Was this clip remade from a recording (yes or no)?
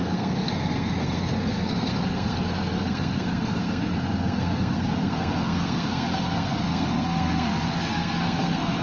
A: yes